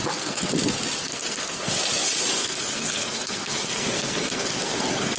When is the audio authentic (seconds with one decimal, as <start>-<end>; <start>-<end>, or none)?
0.5-1.0; 1.7-2.4

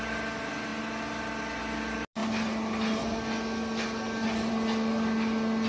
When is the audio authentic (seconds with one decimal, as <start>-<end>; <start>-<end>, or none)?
0.0-5.7

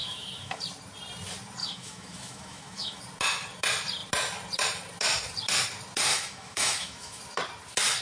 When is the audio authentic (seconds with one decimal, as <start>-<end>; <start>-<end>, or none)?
0.6-1.6; 3.0-6.1; 7.2-8.0